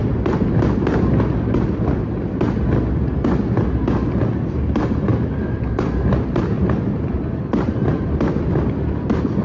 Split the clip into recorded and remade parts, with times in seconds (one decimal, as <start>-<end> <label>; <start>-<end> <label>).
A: 0.0-9.4 recorded